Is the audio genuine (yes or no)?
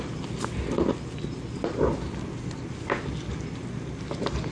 yes